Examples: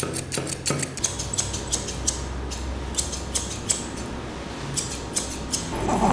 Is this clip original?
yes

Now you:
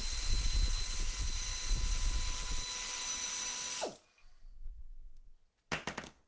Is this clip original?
yes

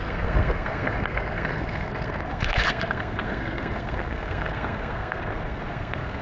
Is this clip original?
no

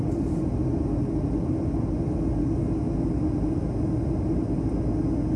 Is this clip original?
yes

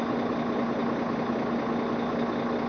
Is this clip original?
yes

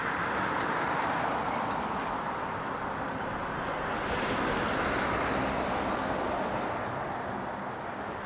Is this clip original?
yes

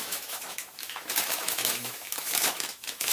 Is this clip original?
no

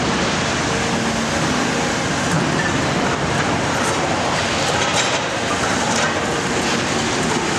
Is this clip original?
yes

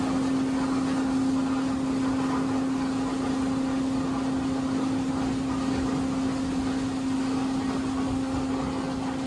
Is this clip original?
yes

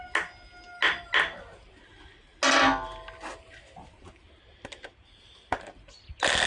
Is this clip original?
yes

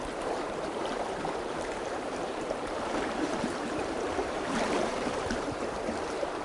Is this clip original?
no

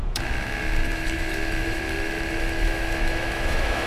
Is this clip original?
no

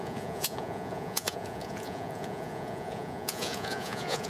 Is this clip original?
no